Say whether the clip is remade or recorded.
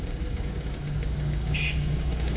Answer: remade